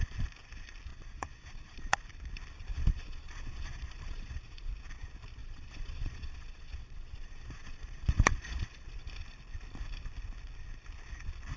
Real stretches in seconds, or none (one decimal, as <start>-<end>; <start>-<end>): 0.0-0.9; 2.0-2.7; 4.7-5.4; 9.1-11.6